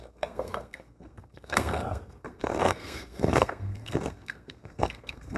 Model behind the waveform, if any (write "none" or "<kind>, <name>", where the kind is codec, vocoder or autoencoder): codec, SNAC